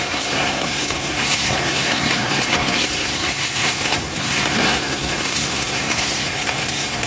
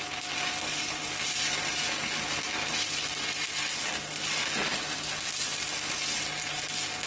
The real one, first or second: second